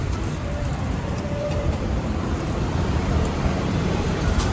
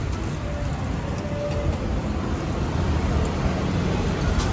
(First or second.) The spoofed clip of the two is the first